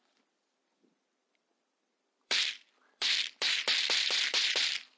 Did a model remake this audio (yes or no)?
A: yes